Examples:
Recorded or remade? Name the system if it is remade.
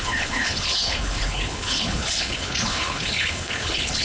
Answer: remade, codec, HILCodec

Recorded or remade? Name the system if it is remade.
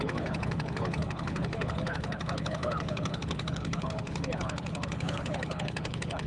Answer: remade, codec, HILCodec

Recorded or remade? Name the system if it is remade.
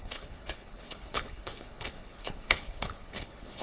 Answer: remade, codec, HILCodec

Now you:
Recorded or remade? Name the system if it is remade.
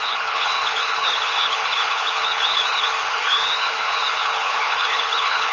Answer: remade, codec, HILCodec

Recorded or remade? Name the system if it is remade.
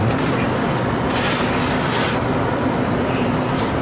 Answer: recorded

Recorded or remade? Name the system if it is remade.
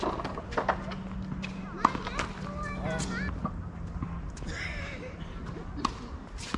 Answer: recorded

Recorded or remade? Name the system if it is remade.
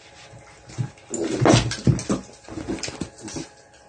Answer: recorded